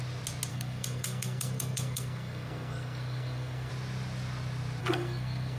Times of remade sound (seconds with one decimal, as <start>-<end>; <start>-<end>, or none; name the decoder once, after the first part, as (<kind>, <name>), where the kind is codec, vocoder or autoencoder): 0.5-3.7 (codec, SNAC); 4.8-5.6